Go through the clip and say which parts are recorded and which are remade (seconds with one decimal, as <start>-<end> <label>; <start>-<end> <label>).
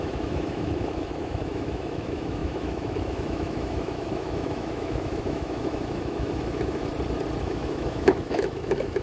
0.0-6.9 remade; 6.9-7.4 recorded; 7.4-9.0 remade